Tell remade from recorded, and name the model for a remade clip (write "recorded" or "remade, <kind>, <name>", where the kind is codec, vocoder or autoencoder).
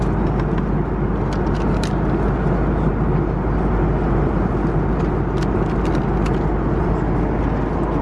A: recorded